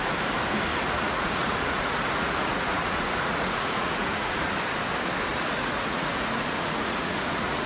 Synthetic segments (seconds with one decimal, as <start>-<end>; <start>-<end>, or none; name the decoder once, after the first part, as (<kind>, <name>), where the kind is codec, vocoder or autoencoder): 0.7-4.5 (vocoder, Vocos); 5.3-7.7